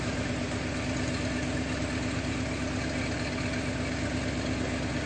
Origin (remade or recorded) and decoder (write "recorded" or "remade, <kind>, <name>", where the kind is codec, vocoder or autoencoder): recorded